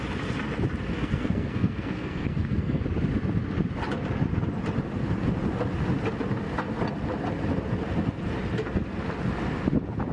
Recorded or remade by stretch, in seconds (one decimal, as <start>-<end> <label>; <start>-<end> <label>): 0.0-0.9 recorded; 0.9-2.8 remade; 2.8-10.1 recorded